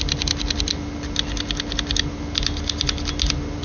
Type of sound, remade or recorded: recorded